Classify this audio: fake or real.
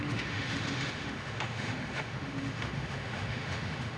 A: fake